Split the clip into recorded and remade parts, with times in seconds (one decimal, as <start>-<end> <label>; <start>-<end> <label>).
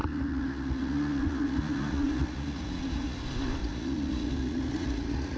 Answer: 0.0-3.2 remade; 3.2-3.6 recorded; 3.6-5.4 remade